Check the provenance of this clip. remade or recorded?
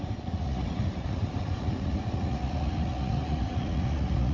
remade